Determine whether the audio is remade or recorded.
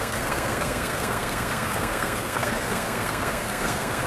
remade